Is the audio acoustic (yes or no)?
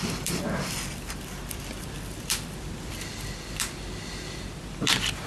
no